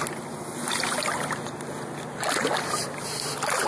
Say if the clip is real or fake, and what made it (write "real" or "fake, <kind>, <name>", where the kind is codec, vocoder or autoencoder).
real